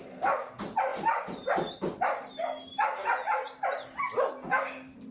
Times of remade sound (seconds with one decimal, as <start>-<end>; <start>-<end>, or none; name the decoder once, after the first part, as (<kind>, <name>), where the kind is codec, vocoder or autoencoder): 0.9-4.0 (vocoder, BigVGAN v2)